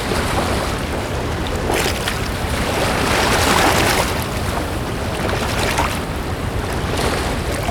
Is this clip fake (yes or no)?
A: no